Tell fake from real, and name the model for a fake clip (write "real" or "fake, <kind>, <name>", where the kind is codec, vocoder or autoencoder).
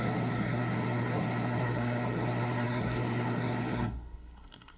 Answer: fake, codec, SNAC